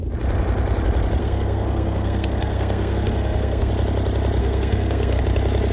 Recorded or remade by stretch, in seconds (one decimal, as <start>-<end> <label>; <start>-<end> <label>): 0.0-1.2 recorded; 1.2-3.7 remade; 3.7-4.4 recorded; 4.4-5.2 remade; 5.2-5.7 recorded